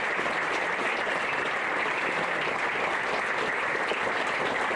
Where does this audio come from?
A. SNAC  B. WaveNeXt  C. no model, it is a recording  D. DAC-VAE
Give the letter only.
C